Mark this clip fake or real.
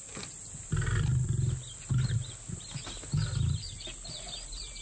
real